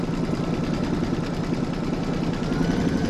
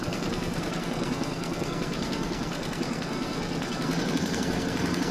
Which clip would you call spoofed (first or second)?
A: second